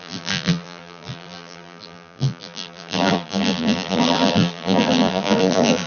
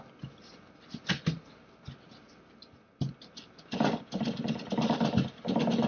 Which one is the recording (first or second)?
second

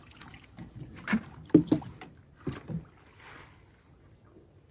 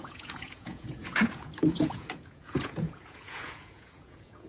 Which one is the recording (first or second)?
first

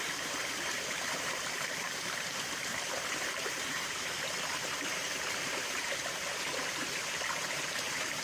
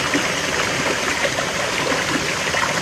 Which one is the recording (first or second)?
second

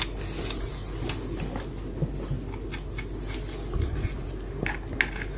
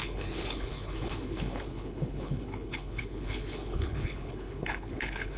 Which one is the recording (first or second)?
first